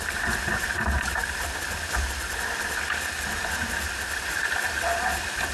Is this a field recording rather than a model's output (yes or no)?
yes